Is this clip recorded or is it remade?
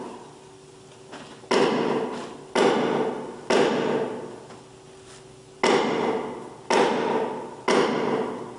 recorded